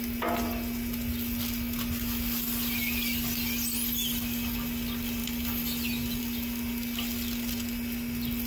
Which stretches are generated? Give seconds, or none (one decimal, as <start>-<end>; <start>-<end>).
none

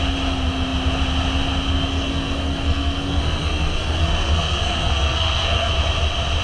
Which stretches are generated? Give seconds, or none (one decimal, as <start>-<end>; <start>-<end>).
1.9-5.7

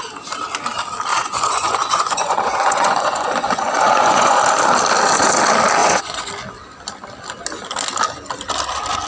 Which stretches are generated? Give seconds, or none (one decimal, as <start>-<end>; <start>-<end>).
1.1-4.4; 5.8-6.3

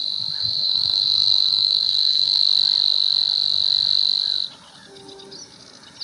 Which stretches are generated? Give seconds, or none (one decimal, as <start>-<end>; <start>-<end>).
0.4-2.4

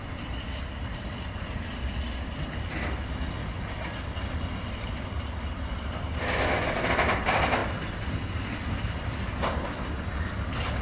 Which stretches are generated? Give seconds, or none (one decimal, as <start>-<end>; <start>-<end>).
none

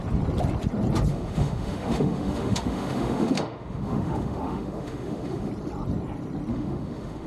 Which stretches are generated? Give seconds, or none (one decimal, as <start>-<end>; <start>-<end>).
1.1-5.5; 6.5-7.3

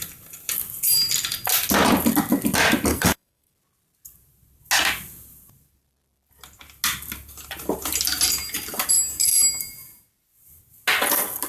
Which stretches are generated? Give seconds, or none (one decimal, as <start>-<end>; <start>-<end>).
2.9-3.5